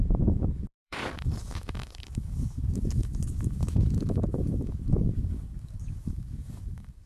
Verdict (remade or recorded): remade